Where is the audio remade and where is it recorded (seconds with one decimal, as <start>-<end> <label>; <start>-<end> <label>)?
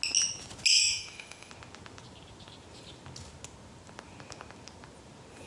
0.0-0.8 recorded; 0.8-1.5 remade; 1.5-5.5 recorded